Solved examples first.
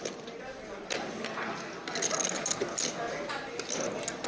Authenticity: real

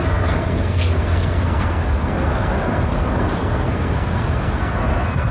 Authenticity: fake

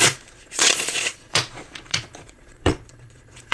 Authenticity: fake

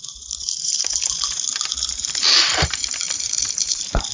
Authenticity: fake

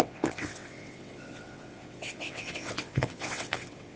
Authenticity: fake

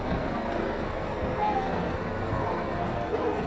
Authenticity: fake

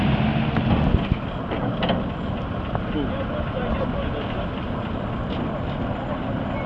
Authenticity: real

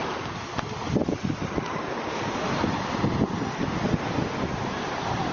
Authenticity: real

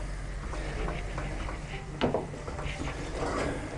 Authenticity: real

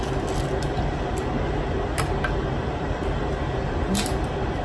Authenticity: real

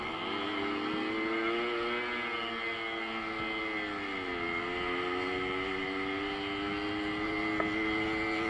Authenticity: real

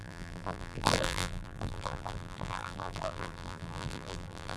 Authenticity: fake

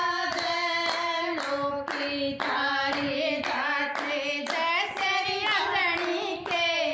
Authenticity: real